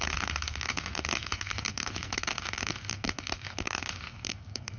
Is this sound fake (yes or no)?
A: yes